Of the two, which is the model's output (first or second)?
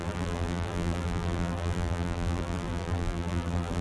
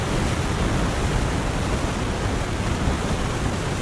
first